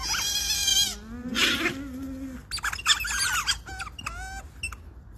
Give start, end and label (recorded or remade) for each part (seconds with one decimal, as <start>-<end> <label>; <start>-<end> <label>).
0.0-5.2 recorded